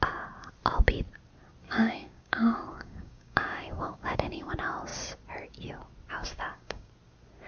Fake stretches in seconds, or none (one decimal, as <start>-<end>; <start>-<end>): 1.6-4.5; 6.2-6.9